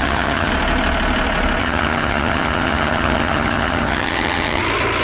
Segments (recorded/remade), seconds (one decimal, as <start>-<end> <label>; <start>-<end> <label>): 0.0-0.5 remade; 0.5-1.6 recorded; 1.6-4.6 remade; 4.6-5.0 recorded